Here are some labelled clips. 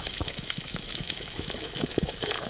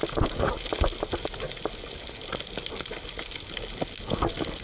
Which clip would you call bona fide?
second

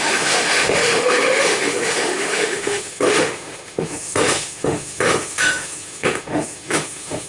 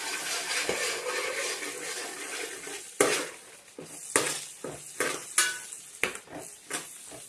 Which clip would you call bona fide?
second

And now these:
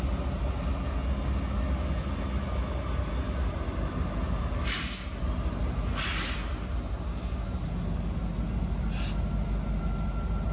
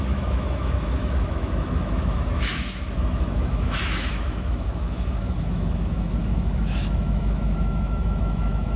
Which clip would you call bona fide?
first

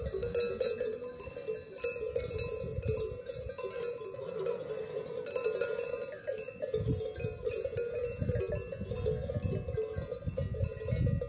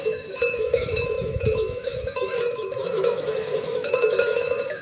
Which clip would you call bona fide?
first